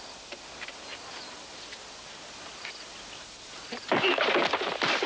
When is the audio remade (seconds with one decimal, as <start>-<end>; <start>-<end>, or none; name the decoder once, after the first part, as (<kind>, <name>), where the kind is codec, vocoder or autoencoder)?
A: none